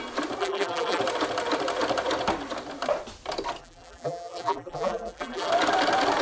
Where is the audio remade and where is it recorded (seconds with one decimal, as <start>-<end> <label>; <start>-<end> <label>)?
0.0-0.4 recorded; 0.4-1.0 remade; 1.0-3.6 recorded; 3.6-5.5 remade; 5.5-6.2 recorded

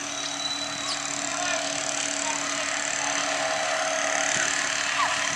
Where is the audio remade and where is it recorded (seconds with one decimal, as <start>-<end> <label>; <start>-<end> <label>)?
0.0-5.4 recorded

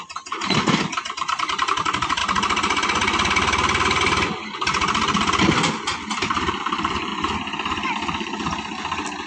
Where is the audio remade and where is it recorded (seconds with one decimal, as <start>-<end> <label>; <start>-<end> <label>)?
0.0-2.2 remade; 2.2-5.5 recorded; 5.5-9.3 remade